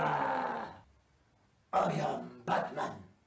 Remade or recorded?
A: recorded